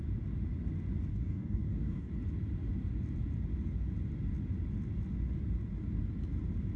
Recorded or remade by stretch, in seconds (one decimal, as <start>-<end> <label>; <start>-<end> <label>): 0.0-1.1 recorded; 1.1-2.1 remade; 2.1-6.8 recorded

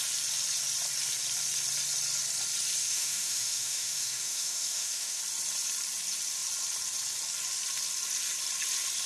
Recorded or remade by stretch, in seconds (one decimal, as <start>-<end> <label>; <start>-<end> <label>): 0.0-2.8 recorded; 2.8-5.2 remade; 5.2-9.1 recorded

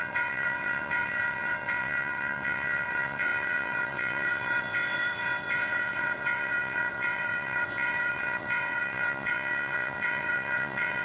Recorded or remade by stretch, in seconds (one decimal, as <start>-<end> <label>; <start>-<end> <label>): 0.0-11.0 remade

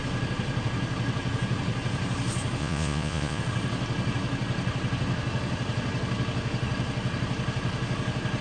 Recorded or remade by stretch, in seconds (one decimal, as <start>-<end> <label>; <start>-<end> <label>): 0.0-2.6 recorded; 2.6-3.4 remade; 3.4-8.4 recorded

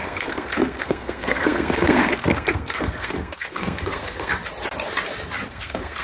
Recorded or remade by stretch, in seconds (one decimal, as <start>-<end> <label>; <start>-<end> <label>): 0.0-4.3 remade; 4.3-5.5 recorded; 5.5-6.0 remade

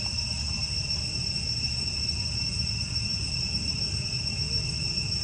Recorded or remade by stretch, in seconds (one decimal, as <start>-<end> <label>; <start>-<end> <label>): 0.0-5.2 recorded